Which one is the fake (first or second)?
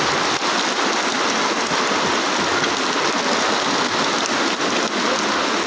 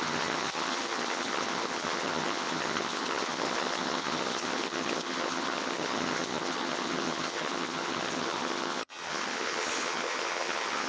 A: second